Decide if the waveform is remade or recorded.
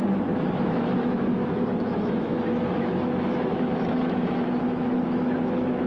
remade